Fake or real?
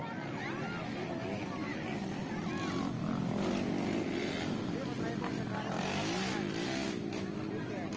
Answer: real